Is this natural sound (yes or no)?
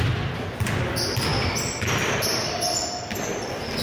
no